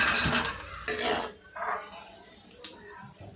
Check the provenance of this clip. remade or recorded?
recorded